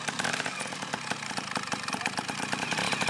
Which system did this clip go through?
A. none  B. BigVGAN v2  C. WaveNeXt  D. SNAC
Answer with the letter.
B